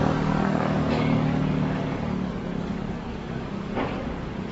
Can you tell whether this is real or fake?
fake